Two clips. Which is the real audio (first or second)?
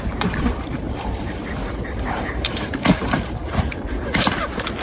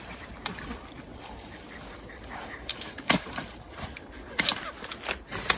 second